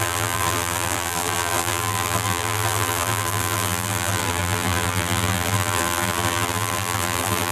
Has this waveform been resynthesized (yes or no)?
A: yes